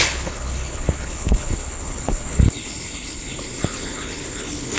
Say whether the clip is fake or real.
fake